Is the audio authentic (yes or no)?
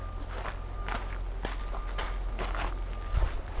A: yes